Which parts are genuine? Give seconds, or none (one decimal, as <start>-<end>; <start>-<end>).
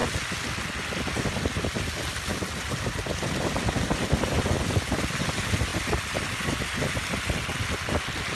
0.0-8.3